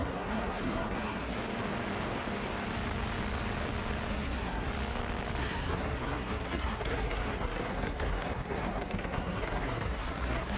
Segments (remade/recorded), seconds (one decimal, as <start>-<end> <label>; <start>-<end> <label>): 0.0-1.4 remade; 1.4-4.1 recorded; 4.1-4.7 remade; 4.7-5.4 recorded; 5.4-10.6 remade